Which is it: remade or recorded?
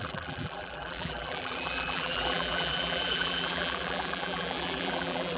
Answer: remade